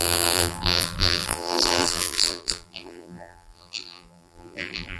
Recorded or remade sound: remade